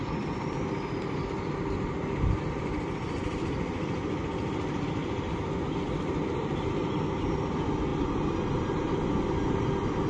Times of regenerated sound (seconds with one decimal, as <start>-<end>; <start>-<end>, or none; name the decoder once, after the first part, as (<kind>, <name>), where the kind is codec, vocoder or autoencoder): none